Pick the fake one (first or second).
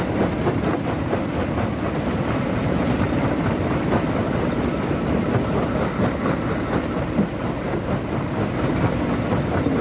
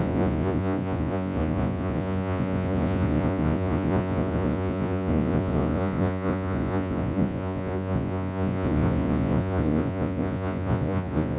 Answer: second